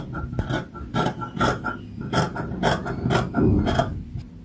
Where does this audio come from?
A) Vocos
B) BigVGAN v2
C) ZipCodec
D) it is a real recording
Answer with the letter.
D